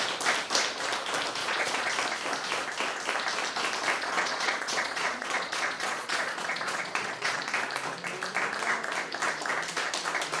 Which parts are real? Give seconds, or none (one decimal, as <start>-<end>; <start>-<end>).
0.0-1.4; 1.9-4.0; 7.4-10.4